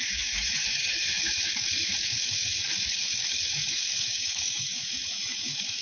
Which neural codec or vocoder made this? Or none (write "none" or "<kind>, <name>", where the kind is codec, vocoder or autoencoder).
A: autoencoder, DAC-VAE